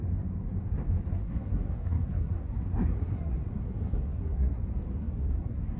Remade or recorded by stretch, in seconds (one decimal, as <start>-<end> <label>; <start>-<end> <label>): 0.0-1.1 recorded; 1.1-4.6 remade; 4.6-5.0 recorded; 5.0-5.8 remade